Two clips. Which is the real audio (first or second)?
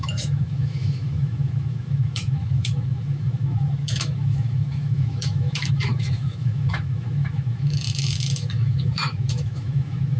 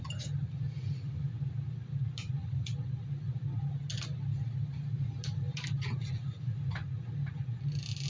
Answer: second